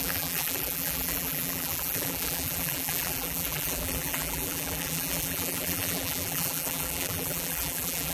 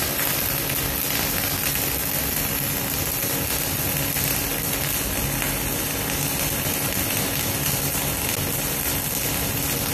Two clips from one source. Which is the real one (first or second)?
second